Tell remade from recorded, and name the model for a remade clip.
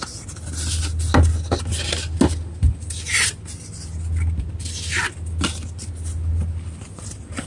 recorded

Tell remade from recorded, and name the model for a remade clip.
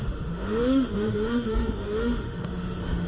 remade, autoencoder, DAC-VAE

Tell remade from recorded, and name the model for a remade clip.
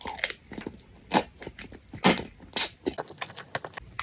recorded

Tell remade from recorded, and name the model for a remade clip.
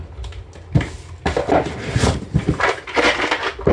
recorded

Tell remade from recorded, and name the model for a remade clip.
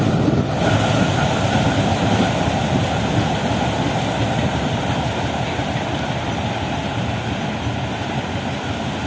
recorded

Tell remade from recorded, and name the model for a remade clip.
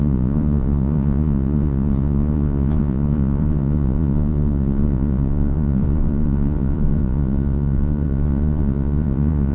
remade, vocoder, Vocos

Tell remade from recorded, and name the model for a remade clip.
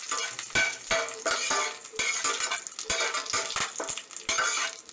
recorded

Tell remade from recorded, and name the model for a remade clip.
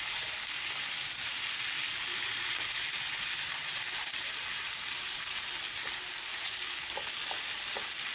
recorded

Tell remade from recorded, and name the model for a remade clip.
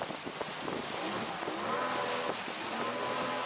recorded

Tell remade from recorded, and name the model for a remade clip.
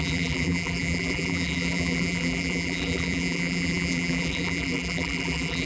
remade, vocoder, BigVGAN v2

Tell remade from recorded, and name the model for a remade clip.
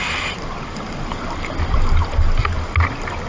recorded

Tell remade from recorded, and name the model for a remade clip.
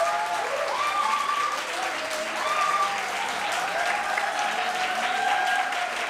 recorded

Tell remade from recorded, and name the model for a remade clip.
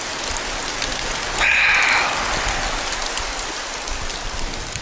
recorded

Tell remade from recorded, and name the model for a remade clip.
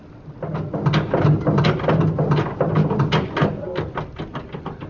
recorded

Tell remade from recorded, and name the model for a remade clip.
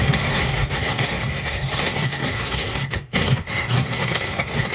remade, codec, SNAC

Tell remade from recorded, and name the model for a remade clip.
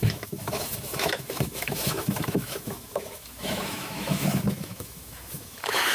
remade, autoencoder, DAC-VAE